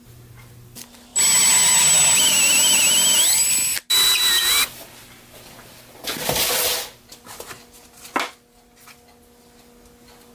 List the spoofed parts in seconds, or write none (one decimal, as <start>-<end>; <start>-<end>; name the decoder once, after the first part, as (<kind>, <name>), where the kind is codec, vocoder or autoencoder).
none